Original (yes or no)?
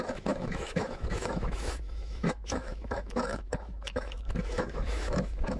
no